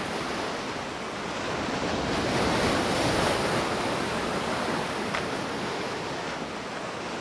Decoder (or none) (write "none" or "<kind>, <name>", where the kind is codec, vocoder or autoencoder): none